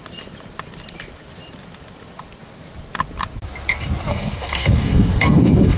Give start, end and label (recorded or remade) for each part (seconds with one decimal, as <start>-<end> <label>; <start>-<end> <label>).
0.0-4.1 recorded; 4.1-5.8 remade

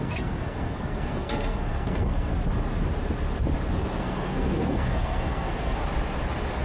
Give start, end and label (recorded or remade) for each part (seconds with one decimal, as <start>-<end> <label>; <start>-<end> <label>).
0.0-2.3 remade; 2.3-4.0 recorded; 4.0-5.8 remade; 5.8-6.6 recorded

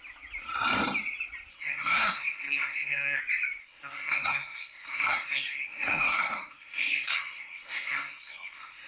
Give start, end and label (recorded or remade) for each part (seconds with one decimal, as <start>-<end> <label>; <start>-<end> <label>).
0.0-1.5 recorded; 1.5-3.2 remade; 3.2-3.6 recorded; 3.6-8.9 remade

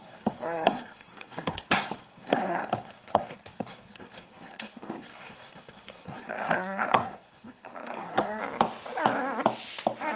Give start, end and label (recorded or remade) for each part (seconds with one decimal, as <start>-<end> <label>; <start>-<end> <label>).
0.0-8.4 remade; 8.4-10.2 recorded

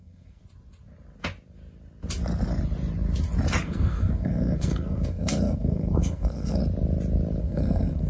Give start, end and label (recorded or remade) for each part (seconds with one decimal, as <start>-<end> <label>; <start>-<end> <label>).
0.0-0.4 remade; 0.4-3.6 recorded; 3.6-6.6 remade; 6.6-7.4 recorded; 7.4-8.1 remade